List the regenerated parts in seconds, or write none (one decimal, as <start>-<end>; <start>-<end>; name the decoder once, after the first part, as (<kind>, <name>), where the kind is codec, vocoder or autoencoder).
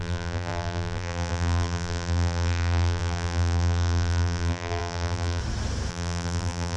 0.0-5.4 (vocoder, BigVGAN v2); 5.9-6.8